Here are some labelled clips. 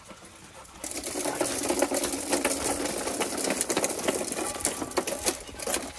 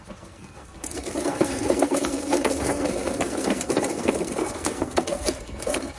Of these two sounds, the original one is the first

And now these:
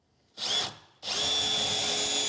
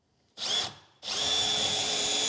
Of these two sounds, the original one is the first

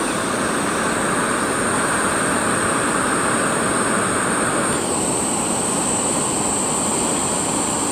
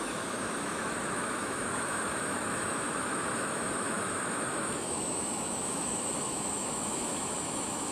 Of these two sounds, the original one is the first